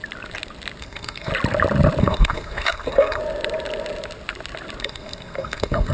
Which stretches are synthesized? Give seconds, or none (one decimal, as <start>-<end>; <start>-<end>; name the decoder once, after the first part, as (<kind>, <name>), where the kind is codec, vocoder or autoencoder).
0.8-1.3 (codec, SNAC); 2.0-3.2; 4.8-5.9